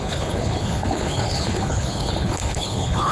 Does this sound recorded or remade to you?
remade